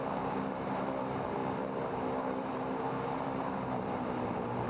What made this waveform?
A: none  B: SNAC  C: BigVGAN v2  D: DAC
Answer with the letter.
C